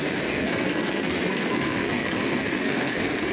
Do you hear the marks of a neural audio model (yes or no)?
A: yes